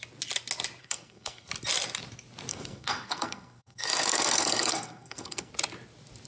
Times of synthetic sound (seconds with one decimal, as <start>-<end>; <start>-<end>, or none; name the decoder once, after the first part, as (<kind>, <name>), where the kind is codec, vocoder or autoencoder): 0.8-1.5 (codec, SNAC); 2.5-5.5